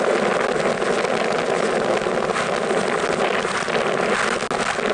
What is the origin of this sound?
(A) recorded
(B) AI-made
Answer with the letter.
A